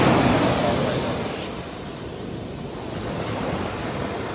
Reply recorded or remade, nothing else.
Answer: recorded